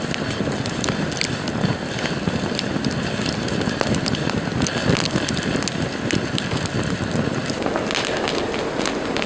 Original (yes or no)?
yes